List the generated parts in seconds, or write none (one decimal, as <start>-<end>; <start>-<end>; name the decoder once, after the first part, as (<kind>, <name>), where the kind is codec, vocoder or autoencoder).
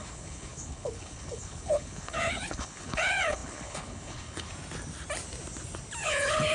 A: 0.0-4.5 (codec, HILCodec); 6.0-6.5